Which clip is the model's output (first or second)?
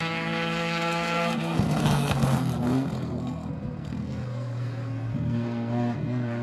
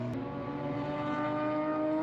first